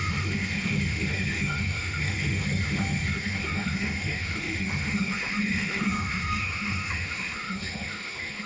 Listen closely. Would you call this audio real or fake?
fake